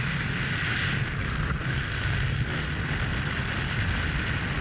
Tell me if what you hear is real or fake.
real